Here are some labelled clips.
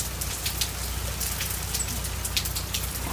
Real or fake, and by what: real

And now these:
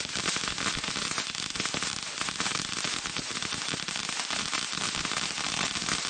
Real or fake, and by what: real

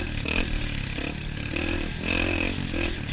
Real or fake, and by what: real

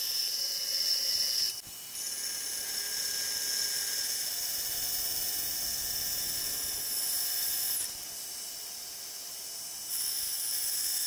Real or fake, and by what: real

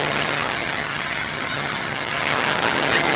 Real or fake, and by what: fake, vocoder, HiFi-GAN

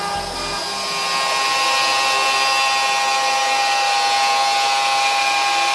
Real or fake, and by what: real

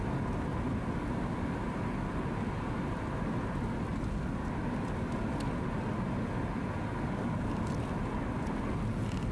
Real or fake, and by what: real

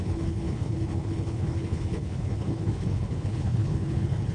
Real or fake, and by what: fake, codec, HILCodec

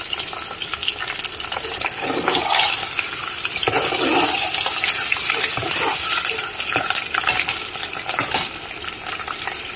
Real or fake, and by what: fake, vocoder, BigVGAN v2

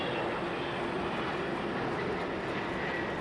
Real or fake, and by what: real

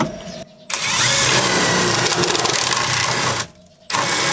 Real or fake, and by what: real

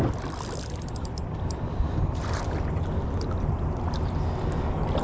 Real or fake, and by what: real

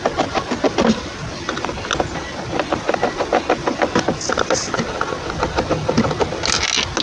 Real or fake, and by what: real